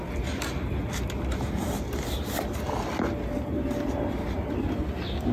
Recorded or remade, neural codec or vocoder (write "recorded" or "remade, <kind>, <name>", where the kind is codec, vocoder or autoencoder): recorded